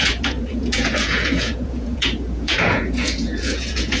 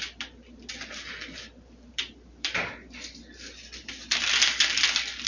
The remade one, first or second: first